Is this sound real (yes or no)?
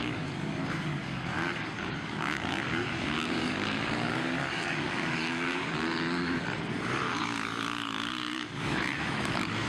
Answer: no